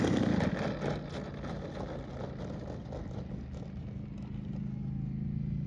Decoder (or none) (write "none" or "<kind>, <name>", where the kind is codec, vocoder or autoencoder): none